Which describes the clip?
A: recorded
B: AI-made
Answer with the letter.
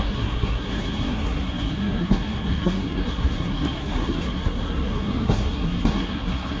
B